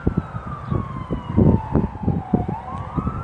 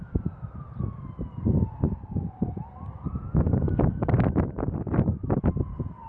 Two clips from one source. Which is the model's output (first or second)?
second